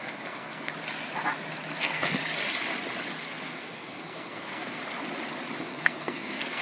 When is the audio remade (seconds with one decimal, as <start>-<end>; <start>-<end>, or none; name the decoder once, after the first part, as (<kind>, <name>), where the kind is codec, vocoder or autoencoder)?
0.0-0.7 (codec, SNAC); 1.8-2.2; 3.6-4.8; 5.6-6.6